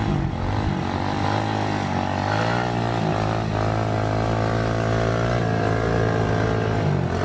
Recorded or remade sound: recorded